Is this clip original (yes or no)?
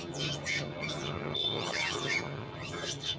no